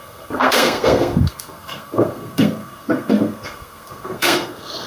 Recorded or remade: remade